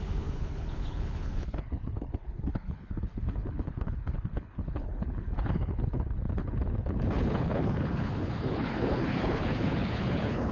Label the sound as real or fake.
fake